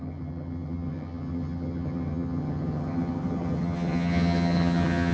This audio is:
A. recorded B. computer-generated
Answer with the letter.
B